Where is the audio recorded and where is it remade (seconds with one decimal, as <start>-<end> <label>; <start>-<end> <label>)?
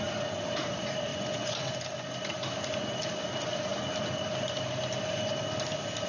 0.0-1.1 recorded; 1.1-1.7 remade; 1.7-6.1 recorded